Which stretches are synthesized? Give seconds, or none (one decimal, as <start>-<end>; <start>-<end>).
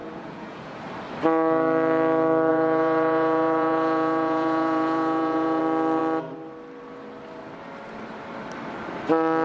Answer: 0.0-0.8; 2.5-5.6